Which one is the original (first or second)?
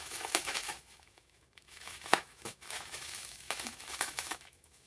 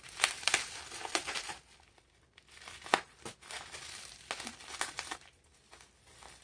second